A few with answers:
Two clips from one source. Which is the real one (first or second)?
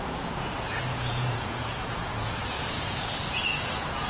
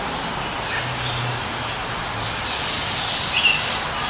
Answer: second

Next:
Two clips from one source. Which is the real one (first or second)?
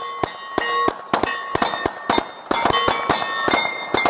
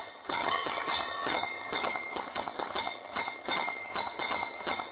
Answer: first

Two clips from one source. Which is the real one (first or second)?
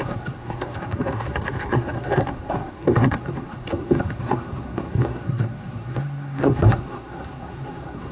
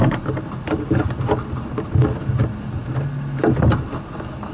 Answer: second